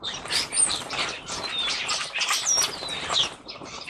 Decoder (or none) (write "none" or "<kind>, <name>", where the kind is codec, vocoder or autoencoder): vocoder, BigVGAN v2